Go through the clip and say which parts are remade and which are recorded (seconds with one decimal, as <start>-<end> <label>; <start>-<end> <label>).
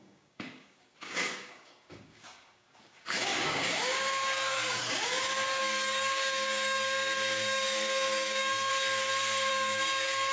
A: 0.0-8.7 remade; 8.7-9.5 recorded; 9.5-10.3 remade